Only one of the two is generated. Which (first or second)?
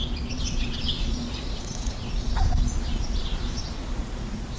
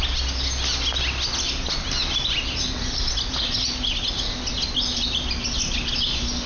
first